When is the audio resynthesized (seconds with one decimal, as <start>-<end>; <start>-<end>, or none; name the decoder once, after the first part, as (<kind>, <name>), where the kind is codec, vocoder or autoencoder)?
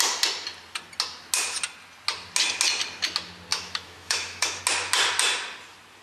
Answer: 3.5-4.6 (autoencoder, DAC-VAE)